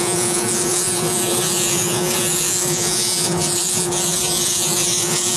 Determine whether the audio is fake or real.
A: fake